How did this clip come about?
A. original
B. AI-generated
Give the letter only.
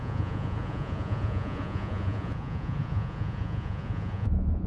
B